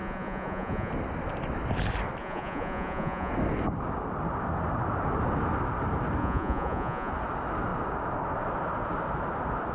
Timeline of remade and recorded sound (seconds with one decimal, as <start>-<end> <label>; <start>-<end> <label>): 0.0-0.9 remade; 0.9-2.2 recorded; 2.2-3.3 remade; 3.3-6.2 recorded; 6.2-7.1 remade; 7.1-9.7 recorded